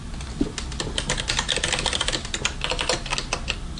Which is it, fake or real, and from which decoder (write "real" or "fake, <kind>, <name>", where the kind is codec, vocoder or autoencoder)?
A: real